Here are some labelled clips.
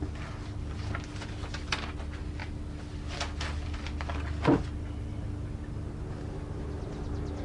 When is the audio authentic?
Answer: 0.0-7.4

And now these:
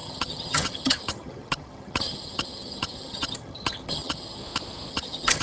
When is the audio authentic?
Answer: 4.4-4.9

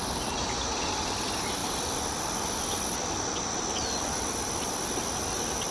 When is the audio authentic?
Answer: 0.0-5.7